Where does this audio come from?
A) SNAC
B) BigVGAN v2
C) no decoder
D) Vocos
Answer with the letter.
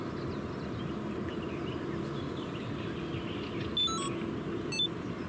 C